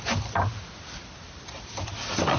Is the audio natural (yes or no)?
yes